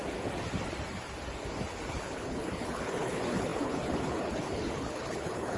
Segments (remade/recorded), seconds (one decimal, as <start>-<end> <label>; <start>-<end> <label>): 0.0-1.9 recorded; 1.9-5.6 remade